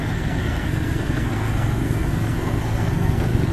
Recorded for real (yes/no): no